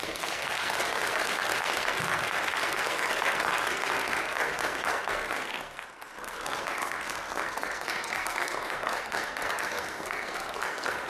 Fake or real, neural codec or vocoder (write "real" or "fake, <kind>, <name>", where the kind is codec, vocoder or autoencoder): fake, codec, SNAC